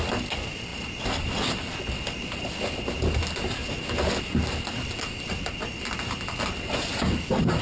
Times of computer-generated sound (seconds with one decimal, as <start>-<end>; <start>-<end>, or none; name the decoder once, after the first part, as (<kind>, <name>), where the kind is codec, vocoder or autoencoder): none